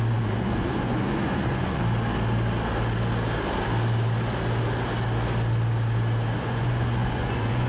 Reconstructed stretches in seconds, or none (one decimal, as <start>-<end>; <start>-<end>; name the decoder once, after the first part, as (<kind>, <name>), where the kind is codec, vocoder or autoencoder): 0.0-1.8 (vocoder, Vocos); 6.4-7.7